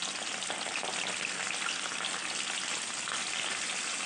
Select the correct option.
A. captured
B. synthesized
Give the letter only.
A